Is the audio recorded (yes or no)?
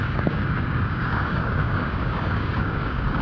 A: no